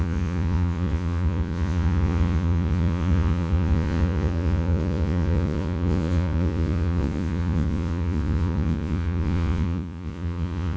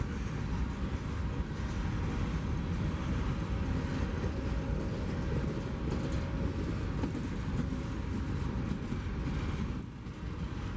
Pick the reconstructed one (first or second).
first